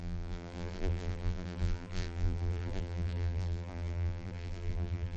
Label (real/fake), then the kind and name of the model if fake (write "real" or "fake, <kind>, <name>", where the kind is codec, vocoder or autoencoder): fake, vocoder, BigVGAN v2